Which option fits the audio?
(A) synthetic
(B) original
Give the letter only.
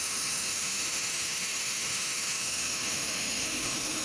A